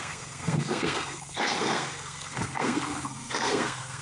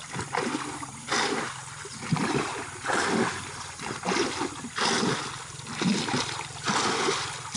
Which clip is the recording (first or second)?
second